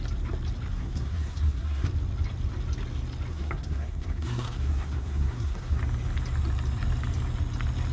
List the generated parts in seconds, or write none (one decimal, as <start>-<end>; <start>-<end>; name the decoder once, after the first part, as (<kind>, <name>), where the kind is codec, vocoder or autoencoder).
0.7-1.9 (codec, SNAC); 3.3-5.8